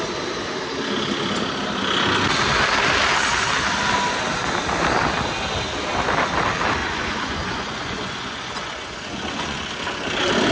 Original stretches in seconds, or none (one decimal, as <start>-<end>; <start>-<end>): 0.0-6.8; 9.7-10.5